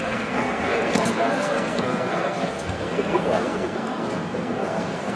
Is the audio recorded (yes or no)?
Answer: no